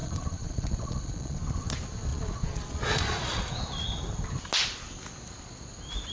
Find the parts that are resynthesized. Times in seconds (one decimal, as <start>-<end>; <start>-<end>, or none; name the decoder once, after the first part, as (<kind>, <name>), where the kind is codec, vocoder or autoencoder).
0.0-1.4 (vocoder, Vocos); 2.1-3.4